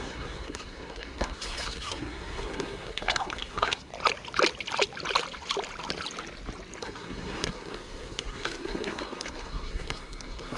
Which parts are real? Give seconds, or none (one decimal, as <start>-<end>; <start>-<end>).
3.9-6.8